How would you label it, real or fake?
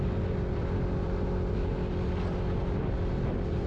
real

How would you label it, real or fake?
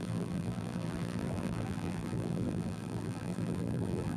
fake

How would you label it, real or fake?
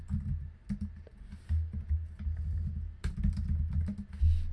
real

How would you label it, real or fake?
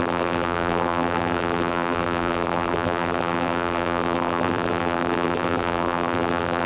fake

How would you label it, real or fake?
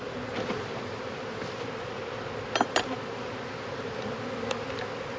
real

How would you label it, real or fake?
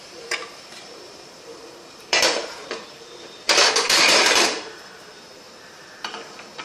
fake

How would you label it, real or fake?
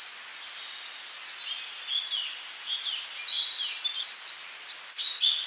real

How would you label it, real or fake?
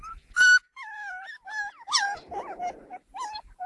fake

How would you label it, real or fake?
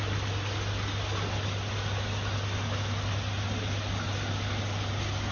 real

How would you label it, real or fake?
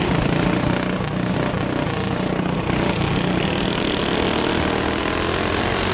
real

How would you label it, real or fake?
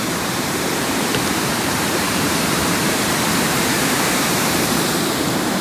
fake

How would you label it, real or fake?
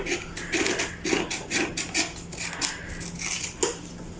real